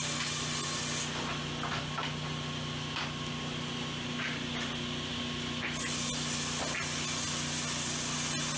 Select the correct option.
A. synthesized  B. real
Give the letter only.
B